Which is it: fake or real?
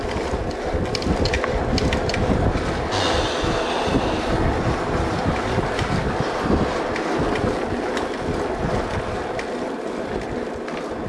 real